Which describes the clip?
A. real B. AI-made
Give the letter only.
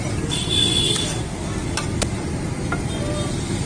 A